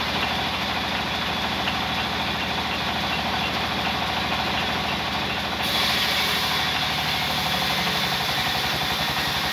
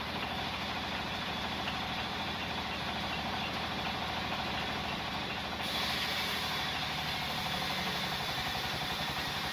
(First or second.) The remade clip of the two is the second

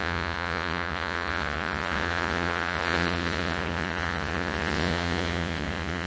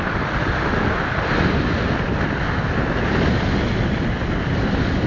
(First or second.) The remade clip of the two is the first